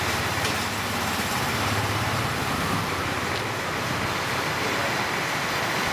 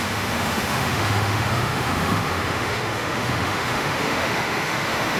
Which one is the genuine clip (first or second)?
first